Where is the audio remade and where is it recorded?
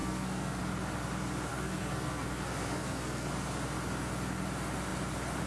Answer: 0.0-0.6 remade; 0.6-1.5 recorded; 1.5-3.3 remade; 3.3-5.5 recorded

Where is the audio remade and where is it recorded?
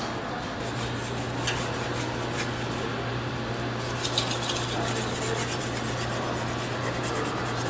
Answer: 0.0-7.7 recorded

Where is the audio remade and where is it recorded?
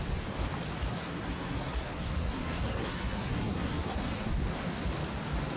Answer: 0.0-0.9 recorded; 0.9-4.3 remade; 4.3-5.6 recorded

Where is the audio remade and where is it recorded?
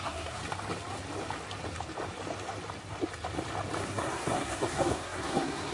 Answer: 0.0-0.4 remade; 0.4-3.8 recorded; 3.8-5.7 remade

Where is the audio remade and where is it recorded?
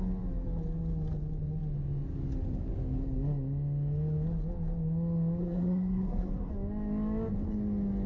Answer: 0.0-5.4 recorded; 5.4-6.5 remade; 6.5-8.1 recorded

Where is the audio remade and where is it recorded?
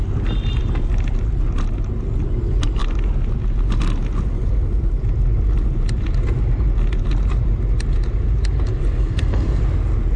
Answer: 0.0-9.0 recorded; 9.0-9.6 remade; 9.6-10.2 recorded